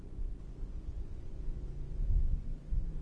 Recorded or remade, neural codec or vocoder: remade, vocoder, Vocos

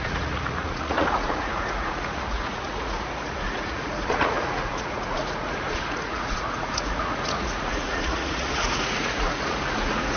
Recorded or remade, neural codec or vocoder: remade, vocoder, Vocos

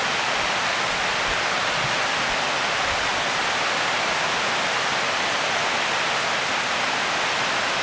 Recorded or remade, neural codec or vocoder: recorded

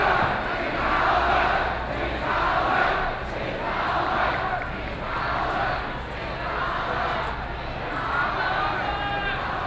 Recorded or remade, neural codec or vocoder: recorded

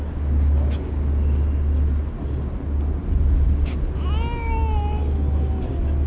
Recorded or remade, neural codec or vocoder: recorded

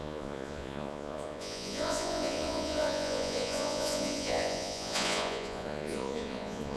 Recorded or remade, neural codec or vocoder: remade, vocoder, Vocos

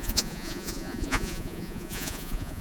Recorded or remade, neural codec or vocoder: remade, vocoder, Vocos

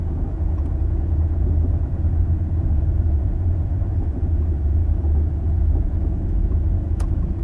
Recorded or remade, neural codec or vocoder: remade, vocoder, Vocos